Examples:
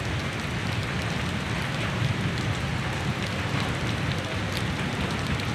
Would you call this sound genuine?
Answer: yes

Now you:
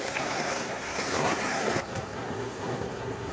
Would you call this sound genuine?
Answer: no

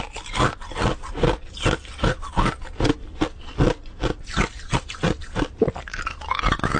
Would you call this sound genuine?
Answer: yes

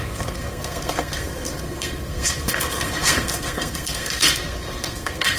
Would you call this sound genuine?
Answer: no